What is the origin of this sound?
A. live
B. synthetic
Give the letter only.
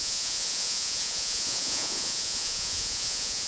B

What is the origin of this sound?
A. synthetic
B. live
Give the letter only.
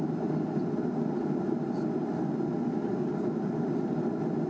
B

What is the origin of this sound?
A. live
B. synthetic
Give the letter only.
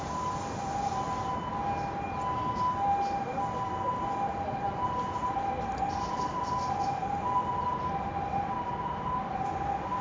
A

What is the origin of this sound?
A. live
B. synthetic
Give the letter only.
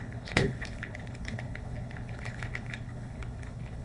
B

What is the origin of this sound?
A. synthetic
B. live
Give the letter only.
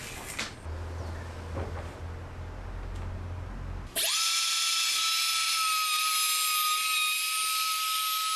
B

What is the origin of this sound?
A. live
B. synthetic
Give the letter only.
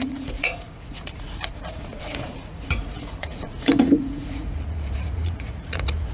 B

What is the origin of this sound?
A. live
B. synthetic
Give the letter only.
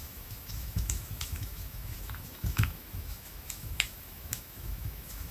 B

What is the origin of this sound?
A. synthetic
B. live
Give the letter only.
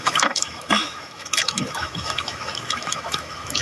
A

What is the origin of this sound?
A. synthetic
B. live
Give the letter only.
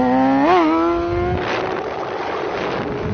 B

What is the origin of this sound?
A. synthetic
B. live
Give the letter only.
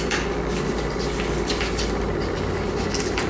B